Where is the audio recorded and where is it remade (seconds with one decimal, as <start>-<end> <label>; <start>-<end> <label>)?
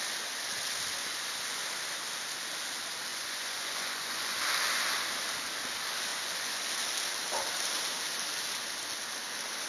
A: 0.0-1.0 recorded; 1.0-1.6 remade; 1.6-3.1 recorded; 3.1-4.4 remade; 4.4-6.1 recorded; 6.1-6.7 remade; 6.7-9.7 recorded